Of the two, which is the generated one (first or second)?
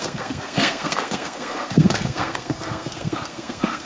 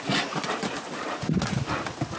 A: first